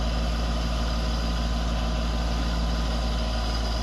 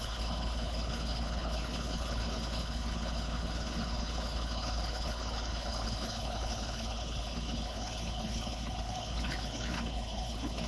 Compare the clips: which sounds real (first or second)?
first